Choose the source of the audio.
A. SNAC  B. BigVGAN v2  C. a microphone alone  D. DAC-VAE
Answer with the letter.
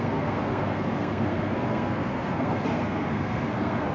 A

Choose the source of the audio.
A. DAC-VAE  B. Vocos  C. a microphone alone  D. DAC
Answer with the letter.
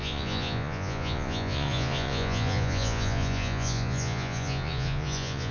B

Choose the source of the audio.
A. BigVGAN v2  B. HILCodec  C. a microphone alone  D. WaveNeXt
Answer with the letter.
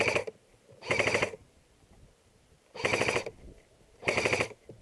A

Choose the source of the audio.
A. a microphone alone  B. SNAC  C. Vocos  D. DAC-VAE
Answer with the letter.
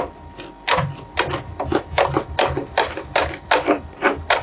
A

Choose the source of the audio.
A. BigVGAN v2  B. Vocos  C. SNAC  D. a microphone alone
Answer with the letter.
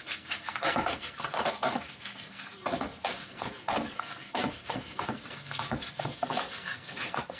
C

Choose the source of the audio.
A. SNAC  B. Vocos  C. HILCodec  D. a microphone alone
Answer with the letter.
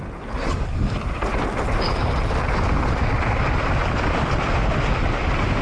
D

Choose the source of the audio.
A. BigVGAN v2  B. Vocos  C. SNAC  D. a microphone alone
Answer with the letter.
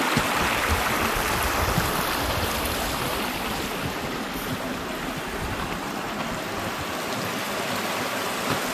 D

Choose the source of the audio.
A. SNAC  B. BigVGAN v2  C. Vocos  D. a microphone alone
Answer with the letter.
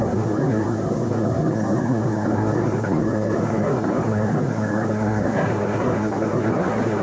A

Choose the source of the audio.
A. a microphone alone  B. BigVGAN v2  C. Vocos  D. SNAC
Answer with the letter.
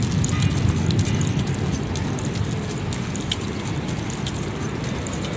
A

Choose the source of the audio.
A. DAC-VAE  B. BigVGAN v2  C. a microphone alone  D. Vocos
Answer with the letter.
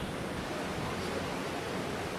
C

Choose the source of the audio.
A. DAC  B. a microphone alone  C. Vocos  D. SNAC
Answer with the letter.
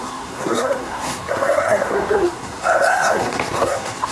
D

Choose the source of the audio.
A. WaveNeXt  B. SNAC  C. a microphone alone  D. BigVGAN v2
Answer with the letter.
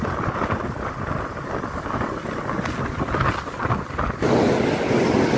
C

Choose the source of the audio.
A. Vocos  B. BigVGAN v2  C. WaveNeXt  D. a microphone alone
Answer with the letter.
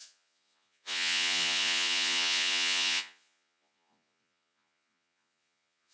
A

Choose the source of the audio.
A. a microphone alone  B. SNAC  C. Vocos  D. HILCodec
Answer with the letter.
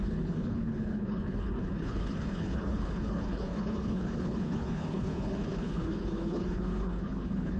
D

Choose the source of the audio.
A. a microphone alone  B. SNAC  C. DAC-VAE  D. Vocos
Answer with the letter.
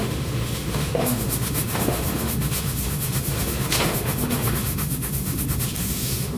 C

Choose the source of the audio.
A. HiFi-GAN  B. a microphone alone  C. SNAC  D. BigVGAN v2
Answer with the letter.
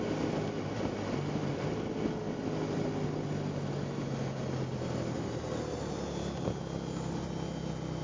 B